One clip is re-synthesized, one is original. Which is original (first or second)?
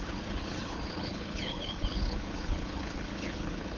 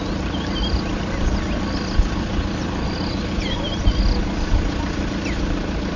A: second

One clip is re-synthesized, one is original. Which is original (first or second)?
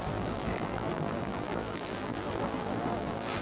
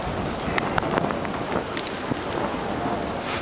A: second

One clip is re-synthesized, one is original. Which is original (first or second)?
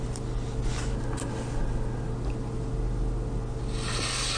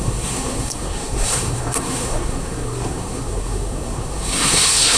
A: first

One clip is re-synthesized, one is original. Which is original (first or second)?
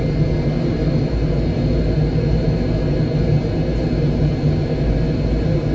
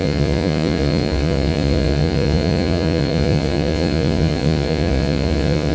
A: first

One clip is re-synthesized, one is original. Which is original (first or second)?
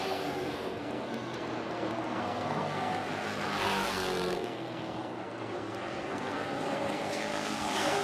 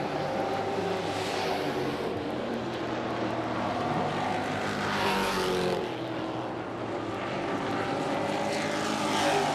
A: second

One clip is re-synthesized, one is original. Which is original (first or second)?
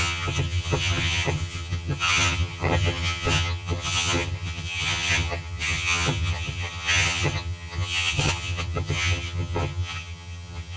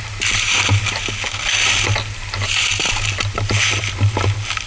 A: second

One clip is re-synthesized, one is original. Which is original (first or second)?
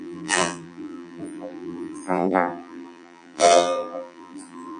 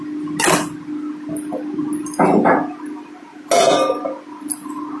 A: second